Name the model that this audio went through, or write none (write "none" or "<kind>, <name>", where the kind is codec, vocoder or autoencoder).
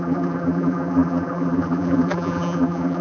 vocoder, BigVGAN v2